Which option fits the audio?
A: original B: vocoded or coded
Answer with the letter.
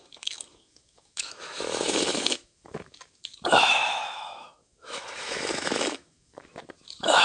B